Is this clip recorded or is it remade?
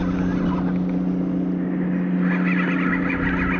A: recorded